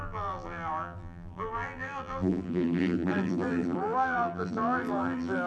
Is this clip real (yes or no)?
no